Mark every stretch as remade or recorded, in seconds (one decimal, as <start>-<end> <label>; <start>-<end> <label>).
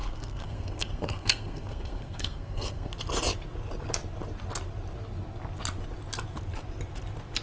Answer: 0.0-2.9 remade; 2.9-7.4 recorded